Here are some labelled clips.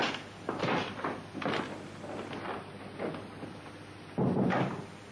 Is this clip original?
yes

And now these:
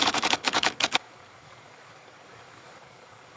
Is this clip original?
no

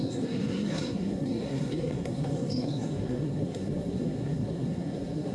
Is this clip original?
no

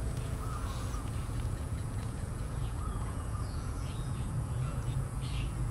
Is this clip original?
no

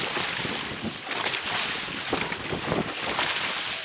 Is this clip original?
yes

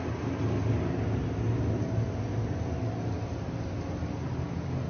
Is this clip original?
yes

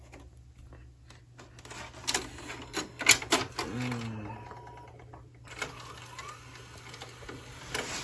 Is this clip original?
yes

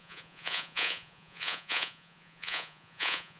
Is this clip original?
no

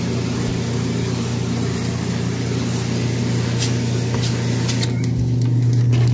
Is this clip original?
yes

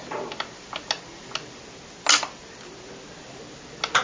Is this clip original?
yes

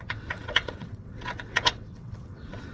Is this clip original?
no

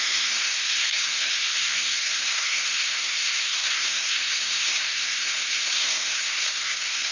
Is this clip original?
no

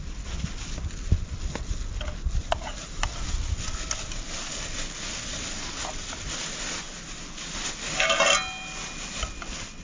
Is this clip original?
yes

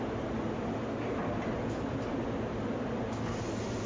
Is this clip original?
yes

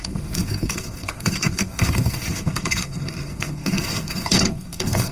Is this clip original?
no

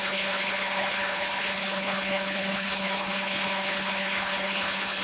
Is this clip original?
no